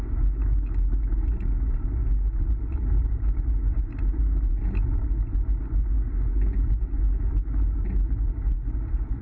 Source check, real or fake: real